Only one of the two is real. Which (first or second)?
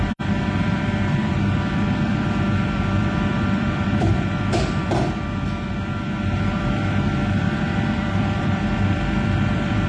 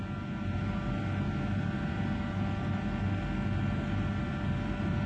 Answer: second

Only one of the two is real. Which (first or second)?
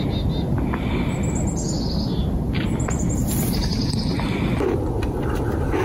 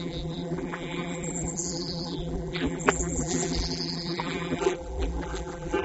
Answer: first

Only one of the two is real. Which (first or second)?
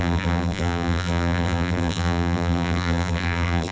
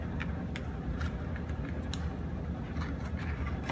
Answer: second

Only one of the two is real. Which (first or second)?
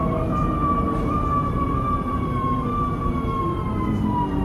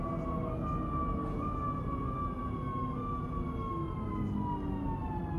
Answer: second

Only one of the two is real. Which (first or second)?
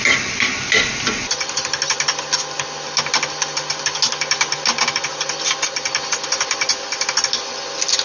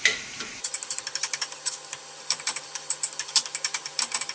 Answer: first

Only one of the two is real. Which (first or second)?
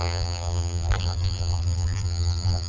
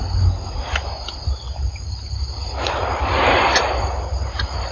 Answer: second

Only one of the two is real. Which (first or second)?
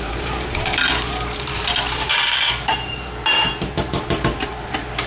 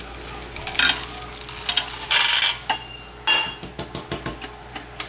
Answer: second